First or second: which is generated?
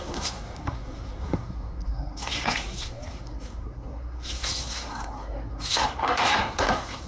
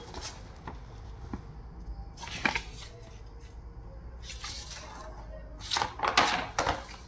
first